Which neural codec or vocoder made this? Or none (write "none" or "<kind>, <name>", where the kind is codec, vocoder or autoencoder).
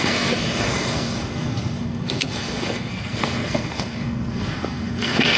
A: codec, SNAC